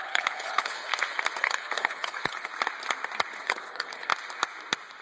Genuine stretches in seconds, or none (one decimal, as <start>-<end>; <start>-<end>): 0.9-1.4; 2.5-3.4; 4.1-5.0